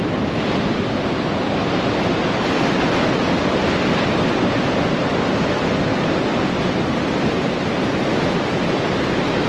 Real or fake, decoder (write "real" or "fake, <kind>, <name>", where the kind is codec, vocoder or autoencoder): real